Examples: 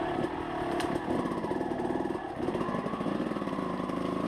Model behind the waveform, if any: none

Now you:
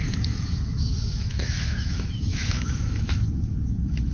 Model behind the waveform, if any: autoencoder, DAC-VAE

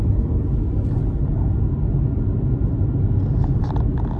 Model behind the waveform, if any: none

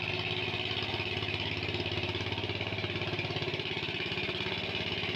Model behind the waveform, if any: none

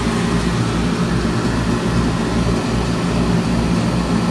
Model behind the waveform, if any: none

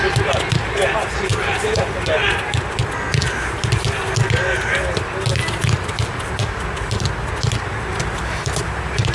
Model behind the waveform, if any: none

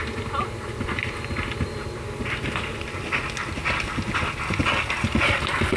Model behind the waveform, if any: none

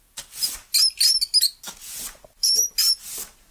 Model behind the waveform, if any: none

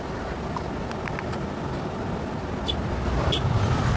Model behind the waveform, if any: none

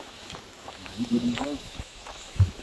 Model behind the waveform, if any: autoencoder, DAC-VAE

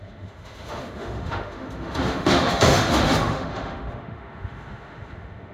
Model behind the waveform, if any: autoencoder, DAC-VAE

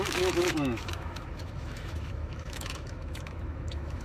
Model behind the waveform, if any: autoencoder, DAC-VAE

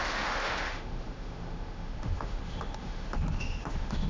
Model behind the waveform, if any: autoencoder, DAC-VAE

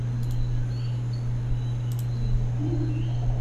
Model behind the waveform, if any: none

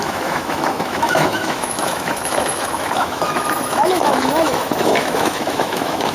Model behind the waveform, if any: autoencoder, DAC-VAE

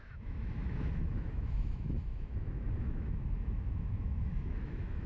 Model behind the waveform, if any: autoencoder, DAC-VAE